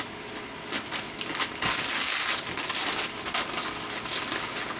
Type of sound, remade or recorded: recorded